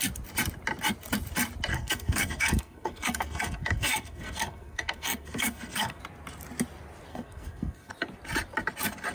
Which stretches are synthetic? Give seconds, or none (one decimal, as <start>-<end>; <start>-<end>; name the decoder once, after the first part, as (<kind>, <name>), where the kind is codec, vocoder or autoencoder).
1.7-6.0 (codec, SNAC); 7.1-7.9